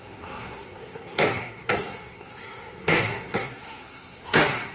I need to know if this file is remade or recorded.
remade